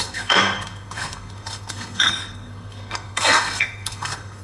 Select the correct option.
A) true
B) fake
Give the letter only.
B